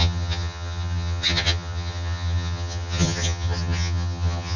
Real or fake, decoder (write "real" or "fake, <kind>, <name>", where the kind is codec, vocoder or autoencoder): fake, vocoder, HiFi-GAN